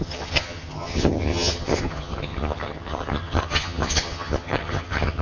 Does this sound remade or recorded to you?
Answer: remade